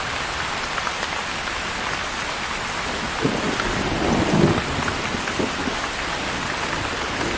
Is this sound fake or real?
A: real